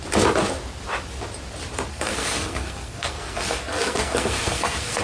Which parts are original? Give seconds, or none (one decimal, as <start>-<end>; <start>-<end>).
0.0-1.9